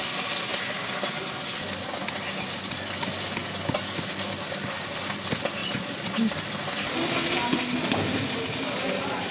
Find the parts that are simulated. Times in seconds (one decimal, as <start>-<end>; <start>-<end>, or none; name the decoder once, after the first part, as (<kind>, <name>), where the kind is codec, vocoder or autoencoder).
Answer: 5.6-6.2 (vocoder, Vocos)